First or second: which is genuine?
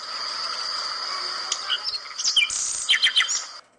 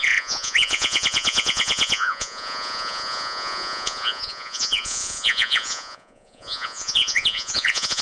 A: first